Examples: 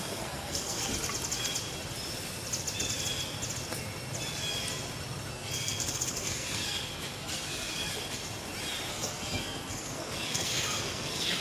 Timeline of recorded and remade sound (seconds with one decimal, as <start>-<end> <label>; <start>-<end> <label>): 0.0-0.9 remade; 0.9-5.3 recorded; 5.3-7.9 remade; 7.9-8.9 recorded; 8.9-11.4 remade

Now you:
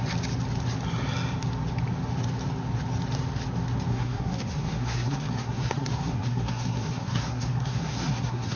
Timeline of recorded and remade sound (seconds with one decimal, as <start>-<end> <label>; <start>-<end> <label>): 0.0-3.9 recorded; 3.9-8.6 remade

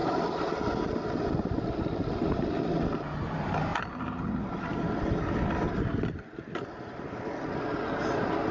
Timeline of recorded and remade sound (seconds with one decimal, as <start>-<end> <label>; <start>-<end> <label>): 0.0-8.5 recorded